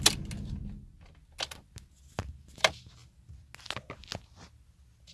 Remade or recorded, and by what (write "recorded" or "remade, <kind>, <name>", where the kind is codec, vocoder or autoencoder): recorded